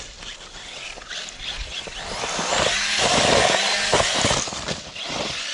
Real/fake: real